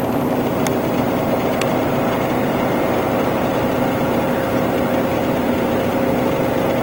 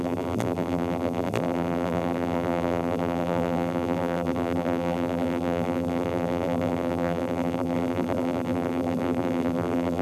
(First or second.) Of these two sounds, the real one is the first